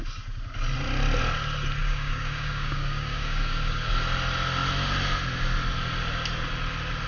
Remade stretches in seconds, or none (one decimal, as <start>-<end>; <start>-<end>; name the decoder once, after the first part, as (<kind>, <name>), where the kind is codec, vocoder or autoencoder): 1.8-3.9 (codec, DAC)